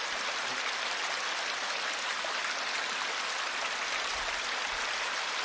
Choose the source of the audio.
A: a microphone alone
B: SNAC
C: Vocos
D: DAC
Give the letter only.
A